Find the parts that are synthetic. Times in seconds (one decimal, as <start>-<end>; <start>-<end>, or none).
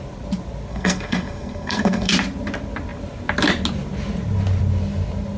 0.7-2.1